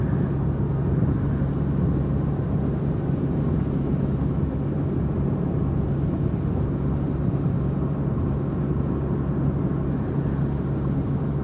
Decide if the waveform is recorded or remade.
recorded